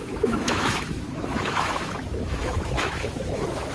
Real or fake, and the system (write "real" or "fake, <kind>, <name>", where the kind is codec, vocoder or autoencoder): fake, autoencoder, DAC-VAE